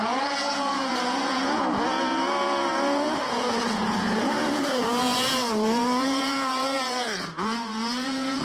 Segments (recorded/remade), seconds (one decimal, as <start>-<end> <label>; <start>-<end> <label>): 0.0-8.4 remade

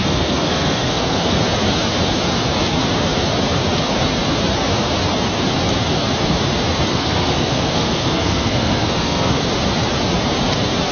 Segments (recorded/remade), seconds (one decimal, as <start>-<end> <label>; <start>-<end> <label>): 0.0-1.3 remade; 1.3-6.9 recorded; 6.9-9.4 remade; 9.4-10.9 recorded

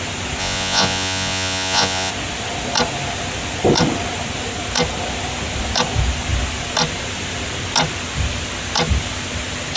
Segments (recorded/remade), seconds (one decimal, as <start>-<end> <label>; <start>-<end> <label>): 0.0-0.4 recorded; 0.4-2.1 remade; 2.1-9.8 recorded